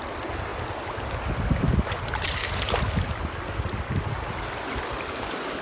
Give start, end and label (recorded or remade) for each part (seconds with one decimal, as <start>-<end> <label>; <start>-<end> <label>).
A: 0.0-5.6 recorded

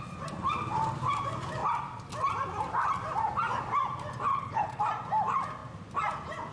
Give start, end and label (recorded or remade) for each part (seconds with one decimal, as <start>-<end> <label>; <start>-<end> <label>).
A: 0.0-4.3 recorded; 4.3-4.8 remade; 4.8-6.5 recorded

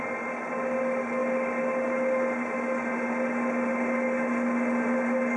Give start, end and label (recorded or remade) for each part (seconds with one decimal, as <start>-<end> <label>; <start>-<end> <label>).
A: 0.0-5.4 recorded

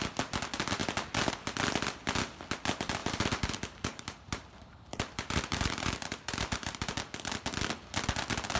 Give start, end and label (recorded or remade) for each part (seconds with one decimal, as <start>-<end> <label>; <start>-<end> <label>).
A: 0.0-3.0 recorded; 3.0-6.9 remade; 6.9-8.6 recorded

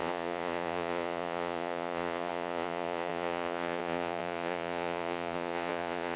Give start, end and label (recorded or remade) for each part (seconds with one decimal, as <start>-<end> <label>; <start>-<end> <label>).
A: 0.0-6.2 remade

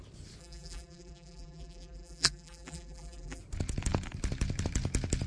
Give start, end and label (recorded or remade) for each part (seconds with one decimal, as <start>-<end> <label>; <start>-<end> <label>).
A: 0.0-0.4 recorded; 0.4-3.4 remade; 3.4-5.3 recorded

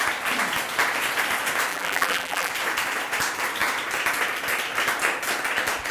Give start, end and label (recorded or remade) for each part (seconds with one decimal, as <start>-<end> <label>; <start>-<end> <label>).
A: 0.0-1.7 recorded; 1.7-2.5 remade; 2.5-5.9 recorded

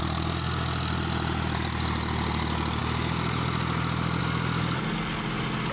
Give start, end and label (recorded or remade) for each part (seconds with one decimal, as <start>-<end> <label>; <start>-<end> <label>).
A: 0.0-5.7 recorded